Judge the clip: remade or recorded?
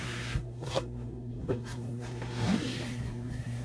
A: remade